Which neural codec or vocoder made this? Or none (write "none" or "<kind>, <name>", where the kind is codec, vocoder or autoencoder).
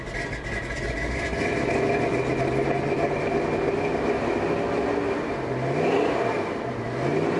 none